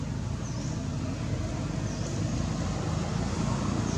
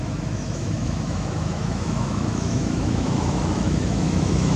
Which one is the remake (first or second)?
second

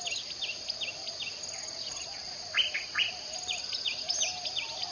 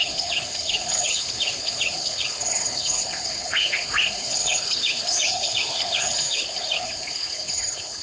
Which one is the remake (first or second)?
second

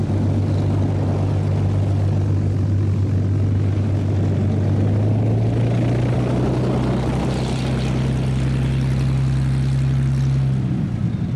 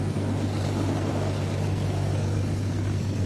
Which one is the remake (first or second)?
second